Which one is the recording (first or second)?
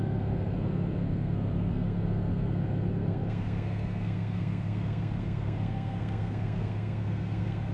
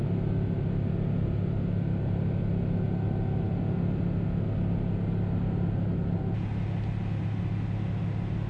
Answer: second